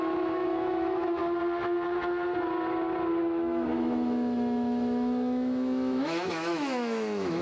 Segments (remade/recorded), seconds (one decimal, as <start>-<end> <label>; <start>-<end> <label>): 0.0-1.2 remade; 1.2-3.2 recorded; 3.2-7.4 remade